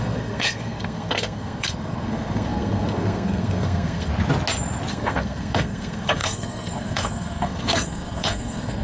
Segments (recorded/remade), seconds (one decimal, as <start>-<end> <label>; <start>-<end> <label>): 0.0-4.1 remade; 4.1-4.9 recorded; 4.9-8.8 remade